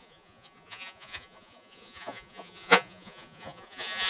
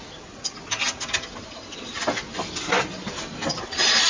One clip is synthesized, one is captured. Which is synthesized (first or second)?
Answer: first